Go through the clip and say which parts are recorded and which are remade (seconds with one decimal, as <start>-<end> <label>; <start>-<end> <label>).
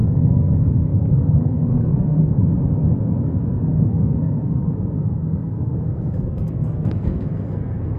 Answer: 0.0-2.4 remade; 2.4-3.2 recorded; 3.2-8.0 remade